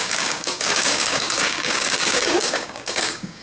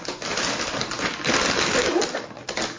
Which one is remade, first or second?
first